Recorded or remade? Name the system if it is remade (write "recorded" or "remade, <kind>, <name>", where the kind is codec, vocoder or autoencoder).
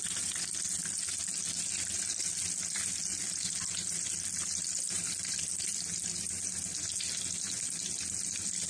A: recorded